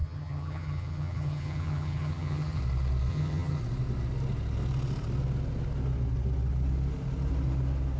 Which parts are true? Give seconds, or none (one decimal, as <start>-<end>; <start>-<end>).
2.6-3.1; 3.6-8.0